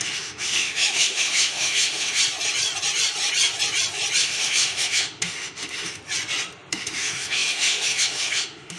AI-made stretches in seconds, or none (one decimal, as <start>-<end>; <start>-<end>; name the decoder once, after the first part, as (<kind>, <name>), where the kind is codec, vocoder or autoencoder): 0.0-2.2 (autoencoder, DAC-VAE); 4.2-6.0; 6.7-8.8